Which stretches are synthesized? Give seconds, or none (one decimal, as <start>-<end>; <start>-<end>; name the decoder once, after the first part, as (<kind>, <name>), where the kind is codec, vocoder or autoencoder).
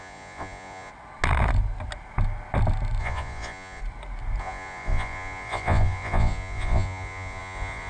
0.0-0.9 (vocoder, Vocos); 3.0-3.8; 4.4-7.9